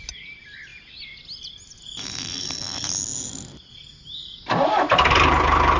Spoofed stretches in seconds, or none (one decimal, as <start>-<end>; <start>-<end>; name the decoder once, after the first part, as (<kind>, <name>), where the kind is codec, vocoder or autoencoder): none